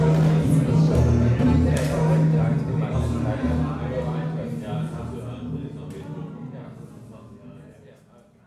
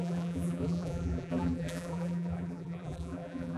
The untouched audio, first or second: first